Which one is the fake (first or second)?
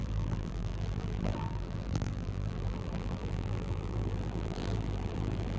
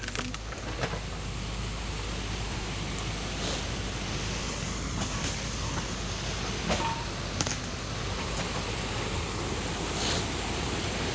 first